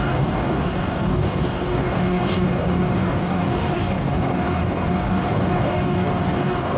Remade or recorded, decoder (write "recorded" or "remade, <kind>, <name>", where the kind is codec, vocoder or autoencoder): remade, codec, DAC